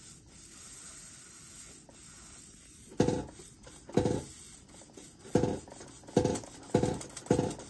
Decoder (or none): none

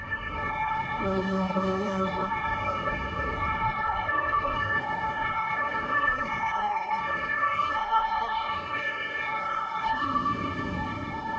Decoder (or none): codec, SNAC